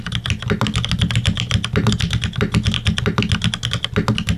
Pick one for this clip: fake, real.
real